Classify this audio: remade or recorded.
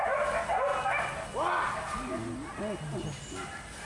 recorded